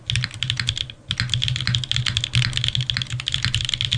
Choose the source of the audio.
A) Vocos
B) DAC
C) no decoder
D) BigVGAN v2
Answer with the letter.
C